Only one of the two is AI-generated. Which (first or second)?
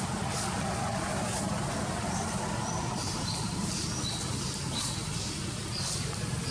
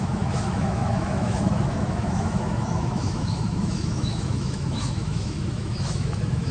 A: second